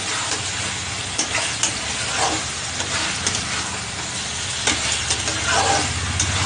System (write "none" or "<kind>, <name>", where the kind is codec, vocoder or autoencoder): none